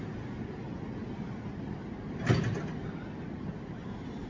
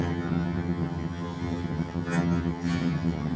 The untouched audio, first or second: first